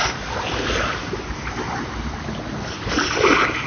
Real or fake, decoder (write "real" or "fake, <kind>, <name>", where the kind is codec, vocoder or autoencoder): real